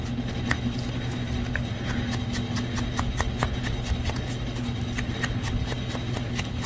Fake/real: real